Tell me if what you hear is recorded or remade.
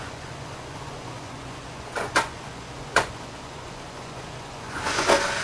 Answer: remade